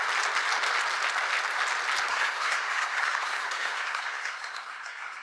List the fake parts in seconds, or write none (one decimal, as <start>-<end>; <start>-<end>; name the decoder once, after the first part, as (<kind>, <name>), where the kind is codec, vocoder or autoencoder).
2.1-5.2 (codec, SNAC)